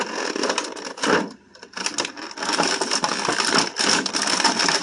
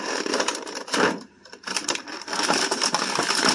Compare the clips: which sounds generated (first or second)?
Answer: second